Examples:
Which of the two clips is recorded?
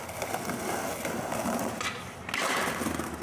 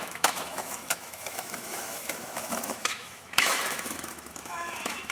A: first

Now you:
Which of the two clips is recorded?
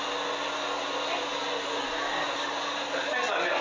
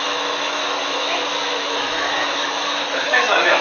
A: first